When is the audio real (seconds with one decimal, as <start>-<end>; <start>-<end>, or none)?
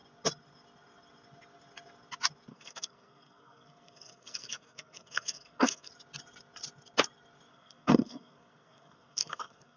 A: 0.0-2.5; 5.9-7.5